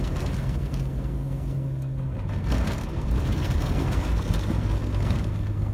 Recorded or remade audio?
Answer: remade